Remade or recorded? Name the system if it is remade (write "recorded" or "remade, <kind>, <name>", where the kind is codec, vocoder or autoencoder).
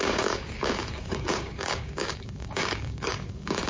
remade, codec, DAC